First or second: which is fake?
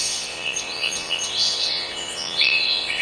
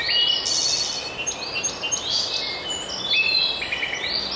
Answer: first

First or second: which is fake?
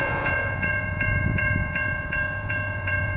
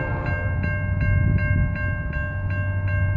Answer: first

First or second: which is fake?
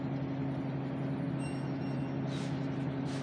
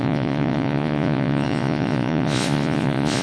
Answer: second